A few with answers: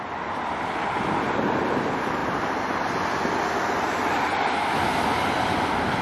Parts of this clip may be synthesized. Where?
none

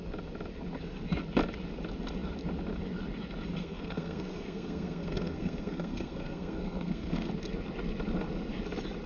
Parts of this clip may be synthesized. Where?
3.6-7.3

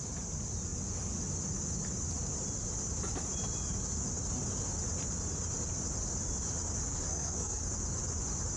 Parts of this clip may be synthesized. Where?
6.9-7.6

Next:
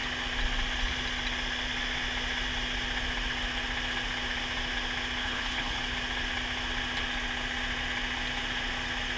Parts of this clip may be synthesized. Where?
5.2-5.8

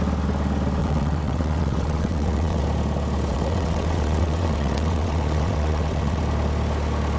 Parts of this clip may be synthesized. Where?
0.8-2.6; 3.3-6.2